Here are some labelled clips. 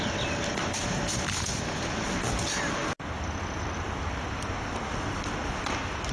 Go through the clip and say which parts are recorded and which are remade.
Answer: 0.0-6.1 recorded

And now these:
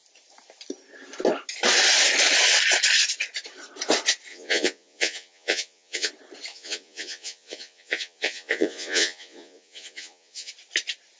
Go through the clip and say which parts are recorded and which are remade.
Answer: 0.0-4.3 recorded; 4.3-6.1 remade; 6.1-6.5 recorded; 6.5-10.5 remade; 10.5-11.2 recorded

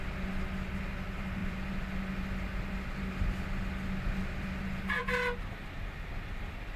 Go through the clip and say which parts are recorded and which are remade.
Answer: 0.0-6.8 recorded

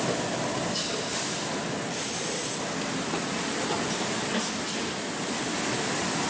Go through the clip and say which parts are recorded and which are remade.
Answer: 0.0-6.3 recorded

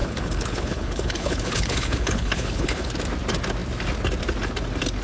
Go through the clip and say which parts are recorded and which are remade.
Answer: 0.0-2.9 remade; 2.9-5.0 recorded

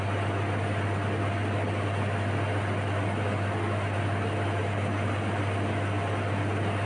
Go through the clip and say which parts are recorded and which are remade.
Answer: 0.0-6.9 recorded

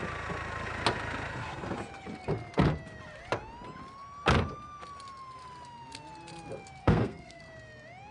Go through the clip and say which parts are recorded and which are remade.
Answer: 0.0-6.8 recorded; 6.8-7.4 remade; 7.4-8.1 recorded

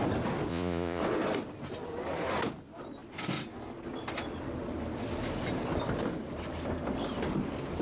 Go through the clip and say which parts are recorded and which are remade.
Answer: 0.0-0.5 recorded; 0.5-1.0 remade; 1.0-7.8 recorded